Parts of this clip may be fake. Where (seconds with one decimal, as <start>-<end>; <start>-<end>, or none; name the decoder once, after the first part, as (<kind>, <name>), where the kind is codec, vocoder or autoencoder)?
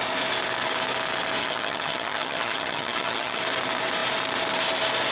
1.4-3.4 (vocoder, HiFi-GAN)